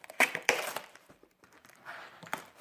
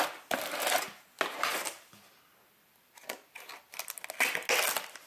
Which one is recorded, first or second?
second